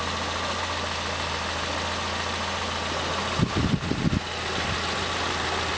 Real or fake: real